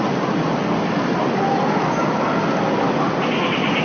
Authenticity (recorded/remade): recorded